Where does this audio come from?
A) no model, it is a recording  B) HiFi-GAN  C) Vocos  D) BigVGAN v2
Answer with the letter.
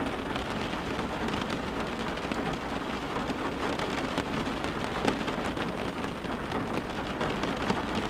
A